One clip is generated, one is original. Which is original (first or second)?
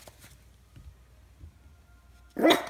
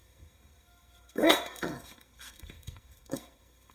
first